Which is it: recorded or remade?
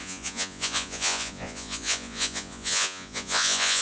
remade